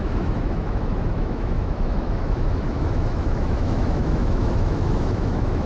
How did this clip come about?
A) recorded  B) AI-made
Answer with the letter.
B